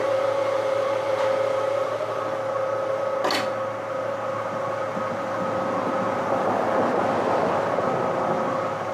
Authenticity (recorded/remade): recorded